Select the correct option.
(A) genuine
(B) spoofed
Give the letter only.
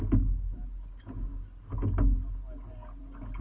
A